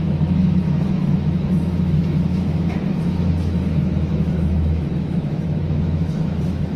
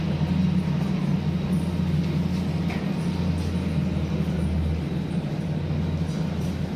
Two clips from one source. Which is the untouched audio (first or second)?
second